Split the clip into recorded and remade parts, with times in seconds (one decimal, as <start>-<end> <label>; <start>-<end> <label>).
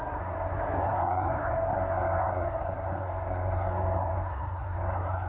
0.0-5.3 remade